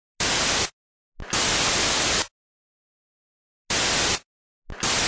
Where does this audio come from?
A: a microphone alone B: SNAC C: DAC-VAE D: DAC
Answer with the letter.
A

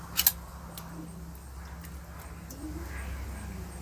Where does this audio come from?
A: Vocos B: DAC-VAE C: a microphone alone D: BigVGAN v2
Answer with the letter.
C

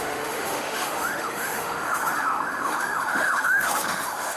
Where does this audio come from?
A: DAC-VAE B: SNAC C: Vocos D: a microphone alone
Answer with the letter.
A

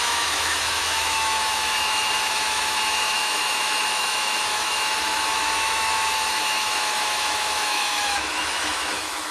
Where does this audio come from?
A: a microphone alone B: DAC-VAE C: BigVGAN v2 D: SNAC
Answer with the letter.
B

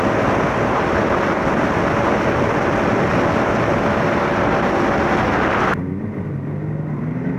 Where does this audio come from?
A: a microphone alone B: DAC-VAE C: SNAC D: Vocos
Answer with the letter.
A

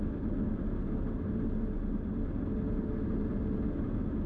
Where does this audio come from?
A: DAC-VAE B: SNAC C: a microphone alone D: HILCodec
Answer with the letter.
C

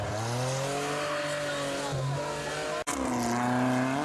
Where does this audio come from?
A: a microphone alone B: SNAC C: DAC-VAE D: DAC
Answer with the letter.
A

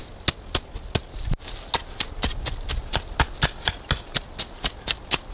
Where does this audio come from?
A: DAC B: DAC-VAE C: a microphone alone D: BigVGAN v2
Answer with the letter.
C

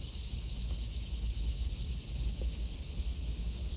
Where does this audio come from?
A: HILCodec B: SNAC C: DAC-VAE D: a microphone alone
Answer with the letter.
C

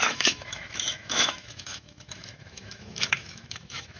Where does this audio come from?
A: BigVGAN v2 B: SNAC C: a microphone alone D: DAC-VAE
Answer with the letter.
D